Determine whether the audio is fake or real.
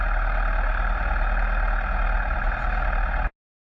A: real